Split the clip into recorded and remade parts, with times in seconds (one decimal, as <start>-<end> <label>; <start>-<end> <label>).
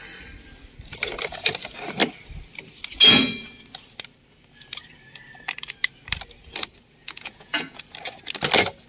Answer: 0.0-7.0 recorded; 7.0-7.8 remade; 7.8-8.9 recorded